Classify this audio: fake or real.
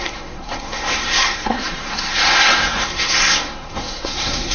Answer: fake